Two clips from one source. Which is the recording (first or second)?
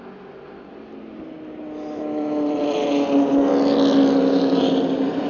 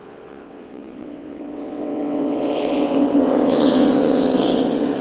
first